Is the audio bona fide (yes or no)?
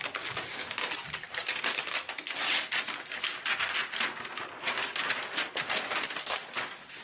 yes